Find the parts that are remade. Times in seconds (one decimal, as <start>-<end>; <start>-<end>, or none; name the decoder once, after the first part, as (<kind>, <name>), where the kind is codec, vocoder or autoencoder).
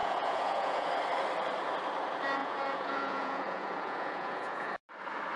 0.0-0.9 (vocoder, Vocos); 2.4-4.7